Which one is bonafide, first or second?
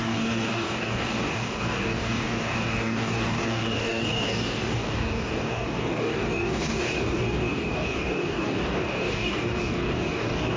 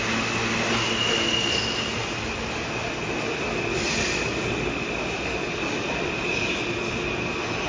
second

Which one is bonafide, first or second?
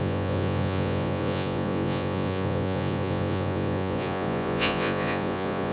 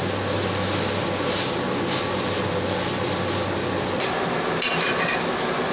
second